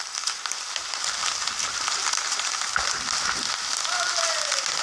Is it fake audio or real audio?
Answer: real